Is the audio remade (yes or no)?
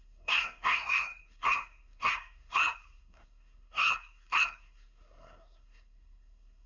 yes